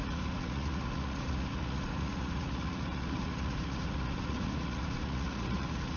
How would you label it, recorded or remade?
remade